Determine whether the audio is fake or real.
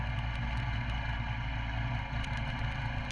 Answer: real